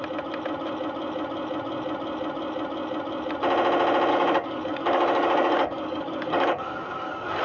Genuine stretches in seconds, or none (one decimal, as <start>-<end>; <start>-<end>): 0.0-4.1